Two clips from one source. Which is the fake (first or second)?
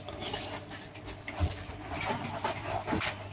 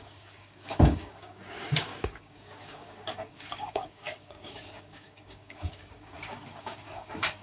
second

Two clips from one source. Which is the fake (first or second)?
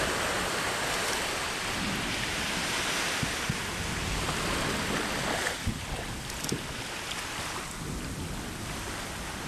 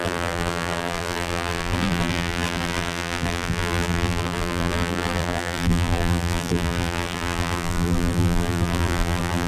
second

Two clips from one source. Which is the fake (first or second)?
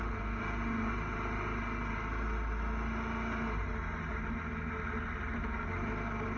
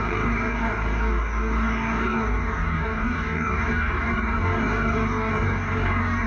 second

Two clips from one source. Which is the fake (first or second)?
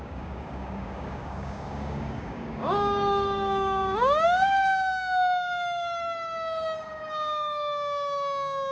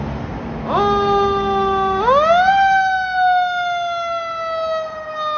first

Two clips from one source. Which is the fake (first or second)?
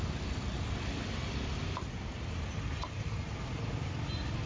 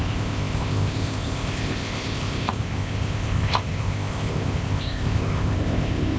second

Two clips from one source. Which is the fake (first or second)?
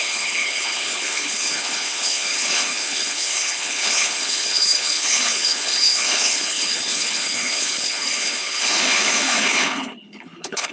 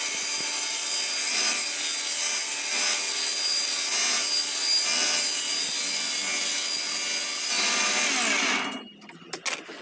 first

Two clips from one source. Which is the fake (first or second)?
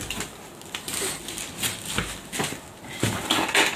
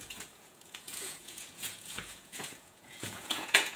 second